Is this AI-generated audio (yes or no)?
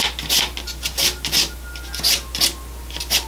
no